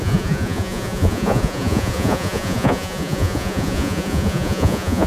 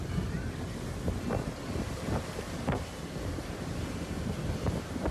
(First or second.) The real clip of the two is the second